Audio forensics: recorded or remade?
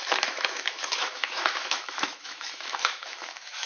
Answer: remade